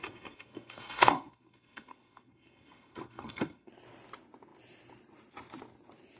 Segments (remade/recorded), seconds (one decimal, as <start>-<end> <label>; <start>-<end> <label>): 0.0-3.7 remade; 3.7-6.2 recorded